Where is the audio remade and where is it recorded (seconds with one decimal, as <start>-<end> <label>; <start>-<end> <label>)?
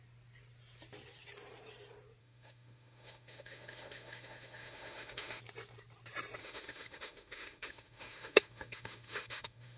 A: 0.0-2.2 recorded; 2.2-5.4 remade; 5.4-6.4 recorded; 6.4-9.8 remade